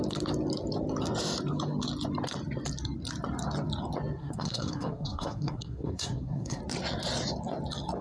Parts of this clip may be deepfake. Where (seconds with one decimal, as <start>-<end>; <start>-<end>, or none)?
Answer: 4.2-6.6